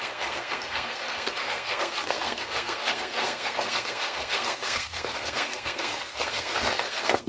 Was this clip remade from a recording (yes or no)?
yes